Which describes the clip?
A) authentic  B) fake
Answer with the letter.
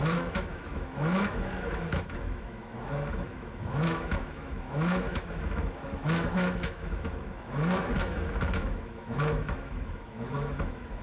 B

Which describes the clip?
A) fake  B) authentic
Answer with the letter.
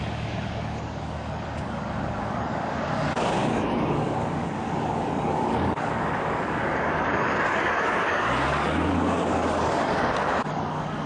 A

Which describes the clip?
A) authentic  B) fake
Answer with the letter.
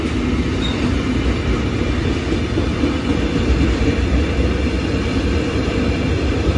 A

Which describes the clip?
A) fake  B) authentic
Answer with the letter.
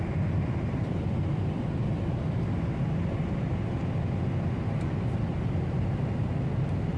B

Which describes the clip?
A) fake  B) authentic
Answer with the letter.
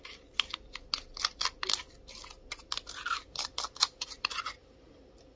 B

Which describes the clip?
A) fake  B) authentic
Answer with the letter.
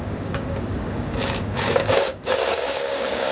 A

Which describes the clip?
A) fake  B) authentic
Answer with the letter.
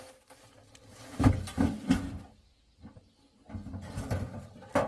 B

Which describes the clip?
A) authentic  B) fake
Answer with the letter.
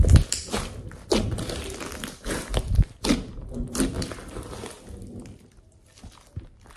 A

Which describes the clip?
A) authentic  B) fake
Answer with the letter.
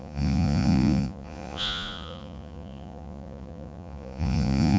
B